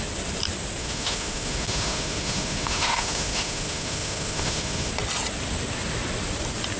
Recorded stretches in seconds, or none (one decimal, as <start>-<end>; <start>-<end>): 0.0-0.8; 4.9-6.8